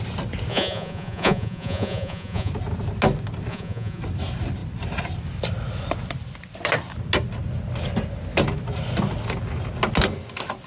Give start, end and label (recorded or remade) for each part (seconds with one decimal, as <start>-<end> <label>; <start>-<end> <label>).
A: 0.0-0.5 recorded; 0.5-2.5 remade; 2.5-3.5 recorded; 3.5-4.0 remade; 4.0-10.7 recorded